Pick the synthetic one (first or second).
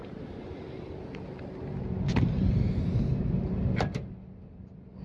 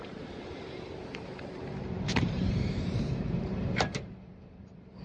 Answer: second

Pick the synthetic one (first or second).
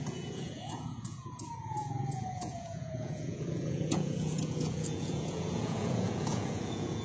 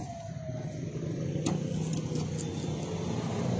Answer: first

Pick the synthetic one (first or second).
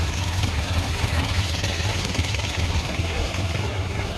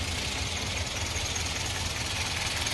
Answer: first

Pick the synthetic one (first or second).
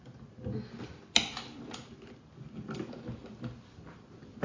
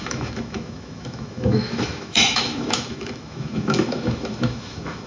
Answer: second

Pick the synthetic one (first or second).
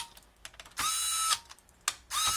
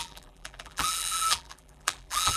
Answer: second